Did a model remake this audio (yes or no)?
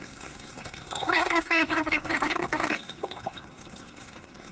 yes